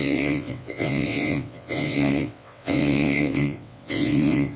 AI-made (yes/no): yes